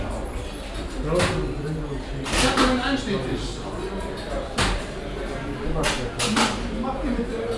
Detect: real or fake real